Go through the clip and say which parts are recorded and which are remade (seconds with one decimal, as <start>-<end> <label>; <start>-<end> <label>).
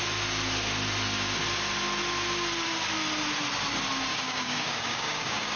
0.0-4.1 recorded; 4.1-5.6 remade